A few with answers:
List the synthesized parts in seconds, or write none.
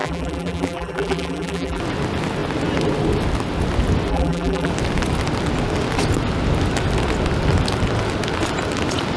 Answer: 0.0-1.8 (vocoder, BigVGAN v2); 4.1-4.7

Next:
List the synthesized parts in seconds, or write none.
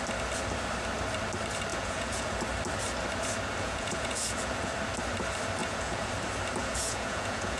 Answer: 1.7-2.4 (vocoder, Vocos); 3.6-4.7; 5.6-6.1; 6.6-7.6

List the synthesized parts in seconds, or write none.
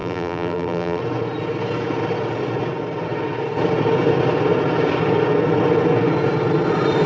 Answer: 0.0-1.0 (vocoder, BigVGAN v2)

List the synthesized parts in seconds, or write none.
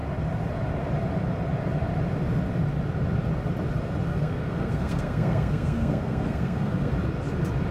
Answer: 4.1-6.9 (codec, SNAC)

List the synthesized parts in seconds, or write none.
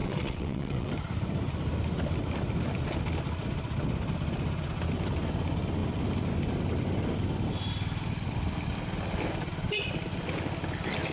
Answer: 0.0-0.9 (vocoder, WaveNeXt)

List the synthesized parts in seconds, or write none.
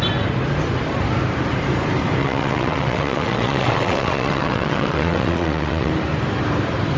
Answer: 2.2-5.9 (vocoder, WaveNeXt)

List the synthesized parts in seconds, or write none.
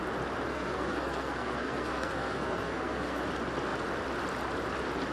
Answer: 0.5-3.2 (codec, SNAC)